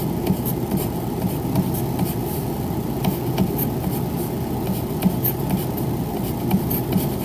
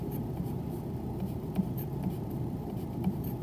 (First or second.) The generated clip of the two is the second